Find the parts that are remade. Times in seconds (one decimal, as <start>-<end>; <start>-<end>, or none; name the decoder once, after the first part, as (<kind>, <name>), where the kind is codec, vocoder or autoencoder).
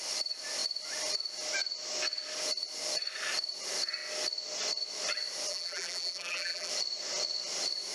5.5-6.7 (vocoder, BigVGAN v2)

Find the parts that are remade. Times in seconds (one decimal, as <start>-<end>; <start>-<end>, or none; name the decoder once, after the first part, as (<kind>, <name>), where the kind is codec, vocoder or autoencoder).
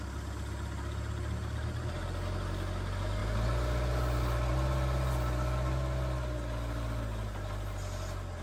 none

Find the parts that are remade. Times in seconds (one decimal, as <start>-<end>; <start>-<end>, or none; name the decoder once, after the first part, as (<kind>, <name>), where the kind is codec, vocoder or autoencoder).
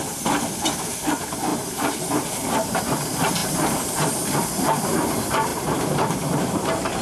0.0-7.0 (vocoder, BigVGAN v2)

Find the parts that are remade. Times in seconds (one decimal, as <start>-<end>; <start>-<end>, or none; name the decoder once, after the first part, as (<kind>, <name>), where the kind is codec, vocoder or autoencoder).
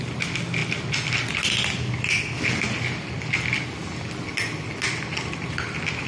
none